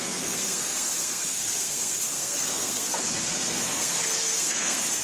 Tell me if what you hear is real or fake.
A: fake